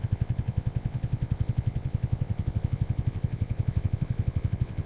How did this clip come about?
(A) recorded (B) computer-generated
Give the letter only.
B